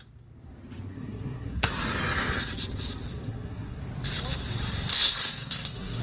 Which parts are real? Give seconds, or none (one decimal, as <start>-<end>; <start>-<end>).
0.0-0.9; 1.7-3.1; 3.8-4.9